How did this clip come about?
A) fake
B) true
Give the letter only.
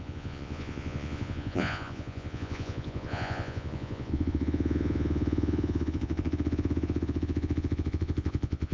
A